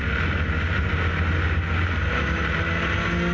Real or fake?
real